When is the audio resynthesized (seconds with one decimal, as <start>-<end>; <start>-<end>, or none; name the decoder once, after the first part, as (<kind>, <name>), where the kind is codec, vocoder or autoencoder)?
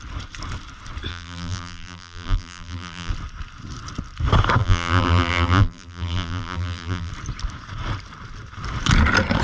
1.1-3.1 (vocoder, BigVGAN v2); 4.6-7.1